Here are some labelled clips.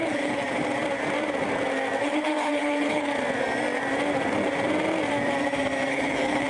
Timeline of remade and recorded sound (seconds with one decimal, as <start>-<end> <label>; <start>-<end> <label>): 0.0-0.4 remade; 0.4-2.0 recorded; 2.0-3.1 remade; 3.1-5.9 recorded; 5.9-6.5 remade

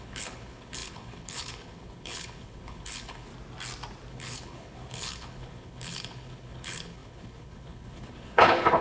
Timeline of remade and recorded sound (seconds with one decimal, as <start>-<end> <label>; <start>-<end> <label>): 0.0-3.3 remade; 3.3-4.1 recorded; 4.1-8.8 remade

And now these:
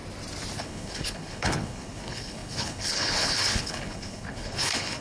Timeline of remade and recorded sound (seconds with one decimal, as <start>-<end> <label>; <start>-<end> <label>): 0.0-0.6 recorded; 0.6-5.0 remade

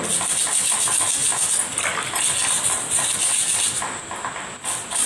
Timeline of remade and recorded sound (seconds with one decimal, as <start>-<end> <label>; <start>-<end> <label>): 0.0-5.1 recorded